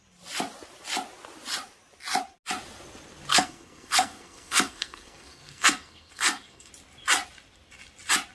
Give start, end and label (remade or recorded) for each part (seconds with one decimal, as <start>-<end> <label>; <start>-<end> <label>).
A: 0.0-3.3 recorded; 3.3-6.7 remade; 6.7-8.3 recorded